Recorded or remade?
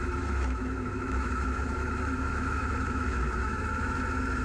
remade